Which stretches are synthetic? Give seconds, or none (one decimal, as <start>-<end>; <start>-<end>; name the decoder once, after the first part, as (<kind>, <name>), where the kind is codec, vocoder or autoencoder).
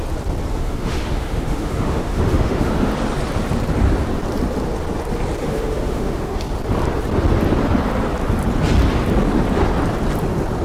0.5-2.9 (autoencoder, DAC-VAE); 5.4-6.4